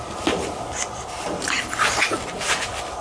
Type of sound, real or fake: real